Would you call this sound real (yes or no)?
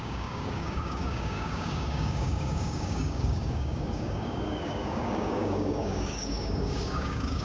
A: no